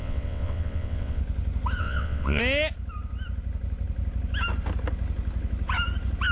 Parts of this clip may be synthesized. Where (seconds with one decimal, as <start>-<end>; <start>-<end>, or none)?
0.0-1.2; 1.8-2.4

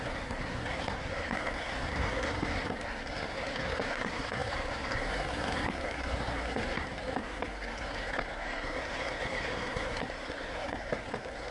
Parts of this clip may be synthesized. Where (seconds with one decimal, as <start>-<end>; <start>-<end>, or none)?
0.0-11.5

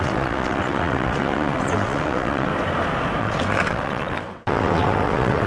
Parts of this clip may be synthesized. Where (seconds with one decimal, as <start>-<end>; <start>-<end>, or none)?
0.0-2.5; 3.2-5.5